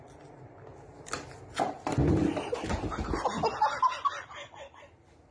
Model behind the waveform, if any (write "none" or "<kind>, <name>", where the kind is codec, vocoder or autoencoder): none